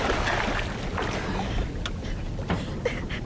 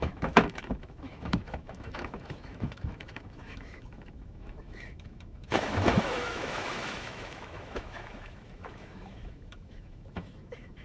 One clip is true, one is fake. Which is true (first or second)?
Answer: first